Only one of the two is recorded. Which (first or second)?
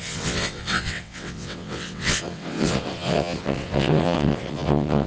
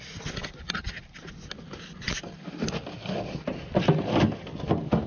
second